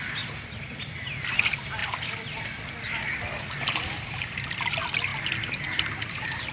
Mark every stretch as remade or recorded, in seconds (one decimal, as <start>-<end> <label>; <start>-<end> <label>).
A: 0.0-6.5 recorded